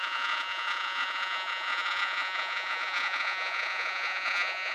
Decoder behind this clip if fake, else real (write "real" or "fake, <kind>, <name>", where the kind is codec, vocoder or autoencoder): fake, vocoder, Vocos